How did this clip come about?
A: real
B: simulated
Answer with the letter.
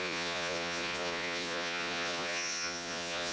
B